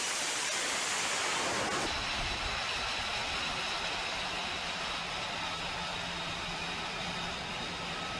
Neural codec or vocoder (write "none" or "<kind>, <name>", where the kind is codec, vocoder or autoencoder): vocoder, BigVGAN v2